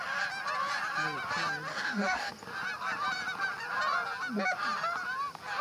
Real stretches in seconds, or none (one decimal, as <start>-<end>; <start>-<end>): 0.0-1.7; 2.3-5.6